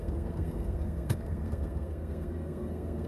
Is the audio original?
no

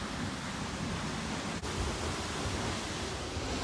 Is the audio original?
yes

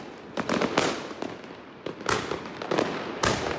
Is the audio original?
yes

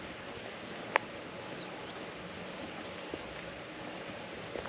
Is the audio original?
yes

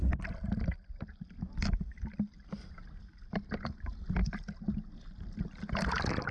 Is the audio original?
yes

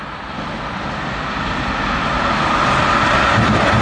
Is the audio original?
yes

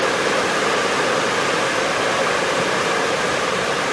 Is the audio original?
yes